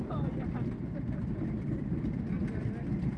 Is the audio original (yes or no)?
yes